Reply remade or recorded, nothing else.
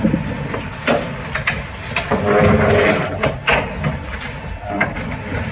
recorded